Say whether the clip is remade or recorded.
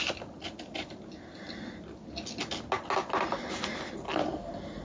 recorded